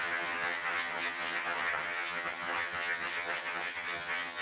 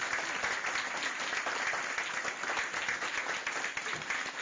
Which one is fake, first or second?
first